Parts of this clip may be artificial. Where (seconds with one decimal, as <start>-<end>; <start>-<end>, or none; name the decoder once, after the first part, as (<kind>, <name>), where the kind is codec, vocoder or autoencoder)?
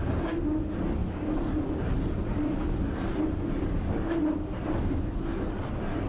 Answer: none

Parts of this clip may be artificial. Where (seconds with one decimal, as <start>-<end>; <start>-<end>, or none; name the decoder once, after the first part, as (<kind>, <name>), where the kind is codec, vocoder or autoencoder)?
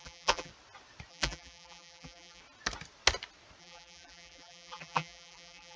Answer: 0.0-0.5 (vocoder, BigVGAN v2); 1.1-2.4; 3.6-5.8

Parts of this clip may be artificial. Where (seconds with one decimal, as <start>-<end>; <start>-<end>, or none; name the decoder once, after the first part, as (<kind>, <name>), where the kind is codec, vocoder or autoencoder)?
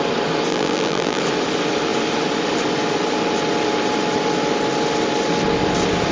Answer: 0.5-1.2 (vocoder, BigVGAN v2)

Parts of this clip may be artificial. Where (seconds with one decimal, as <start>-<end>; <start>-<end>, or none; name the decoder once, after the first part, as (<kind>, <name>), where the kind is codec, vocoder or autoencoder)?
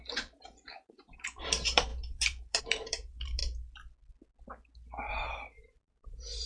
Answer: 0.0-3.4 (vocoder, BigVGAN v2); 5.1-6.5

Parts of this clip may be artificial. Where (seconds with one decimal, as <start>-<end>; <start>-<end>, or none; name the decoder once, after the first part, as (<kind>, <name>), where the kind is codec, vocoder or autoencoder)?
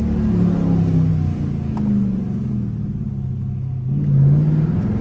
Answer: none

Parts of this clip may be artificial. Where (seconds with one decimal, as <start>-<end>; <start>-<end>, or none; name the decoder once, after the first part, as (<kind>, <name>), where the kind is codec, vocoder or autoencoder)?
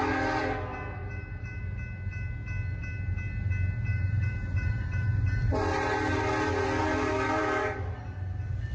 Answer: 1.0-1.6 (vocoder, BigVGAN v2); 3.9-6.2; 6.8-8.0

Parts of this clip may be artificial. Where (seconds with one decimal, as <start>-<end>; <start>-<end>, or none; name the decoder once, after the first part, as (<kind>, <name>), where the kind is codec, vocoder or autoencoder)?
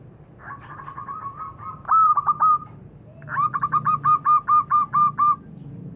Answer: none